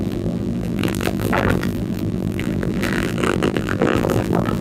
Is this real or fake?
fake